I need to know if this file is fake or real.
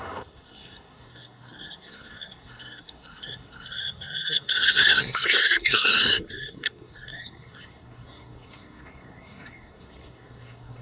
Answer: fake